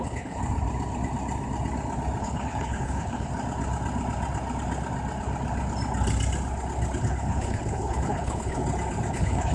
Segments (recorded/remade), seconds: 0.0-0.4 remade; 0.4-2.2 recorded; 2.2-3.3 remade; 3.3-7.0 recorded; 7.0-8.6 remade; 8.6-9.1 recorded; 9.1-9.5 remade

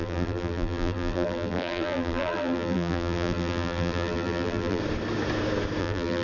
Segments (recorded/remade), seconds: 0.0-4.8 remade; 4.8-5.8 recorded; 5.8-6.2 remade

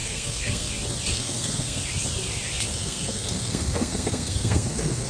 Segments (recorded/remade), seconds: 0.0-0.7 remade; 0.7-1.1 recorded; 1.1-1.8 remade; 1.8-2.7 recorded; 2.7-5.1 remade